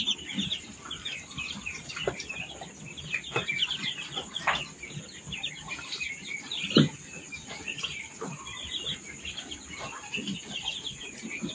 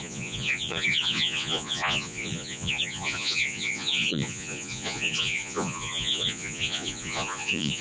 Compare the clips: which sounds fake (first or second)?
second